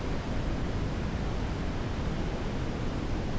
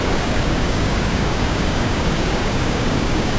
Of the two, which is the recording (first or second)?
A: first